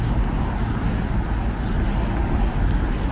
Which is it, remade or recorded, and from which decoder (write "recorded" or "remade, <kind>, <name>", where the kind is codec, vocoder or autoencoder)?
recorded